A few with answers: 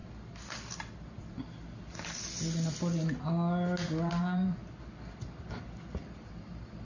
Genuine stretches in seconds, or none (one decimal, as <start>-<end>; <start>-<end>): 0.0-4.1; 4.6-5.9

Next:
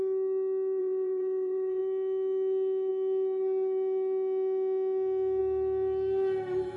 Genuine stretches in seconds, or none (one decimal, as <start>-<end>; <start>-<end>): 0.0-0.8; 1.8-6.8

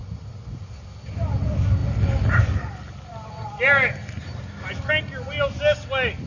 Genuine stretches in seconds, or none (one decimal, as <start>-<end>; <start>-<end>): 0.0-6.3

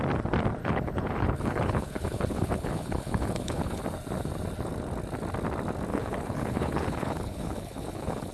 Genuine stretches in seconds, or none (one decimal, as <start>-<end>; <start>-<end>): 0.0-0.6; 3.8-5.9

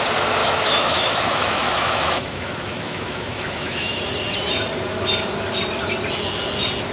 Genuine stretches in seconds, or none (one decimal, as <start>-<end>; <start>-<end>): 0.0-0.4; 4.0-6.9

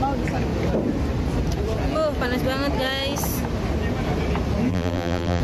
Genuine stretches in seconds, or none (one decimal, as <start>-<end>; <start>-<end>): 0.0-4.7

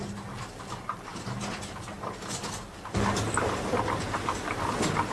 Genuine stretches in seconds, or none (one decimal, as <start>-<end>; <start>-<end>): 0.0-5.1

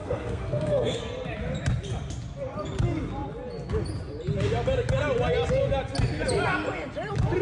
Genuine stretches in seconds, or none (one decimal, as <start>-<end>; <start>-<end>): 1.0-7.4